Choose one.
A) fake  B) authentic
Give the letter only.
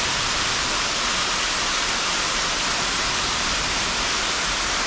B